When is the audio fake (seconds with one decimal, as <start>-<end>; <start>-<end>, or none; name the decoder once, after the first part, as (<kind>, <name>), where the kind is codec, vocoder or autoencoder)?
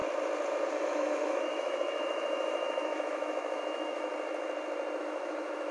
0.7-4.1 (autoencoder, DAC-VAE); 5.0-5.7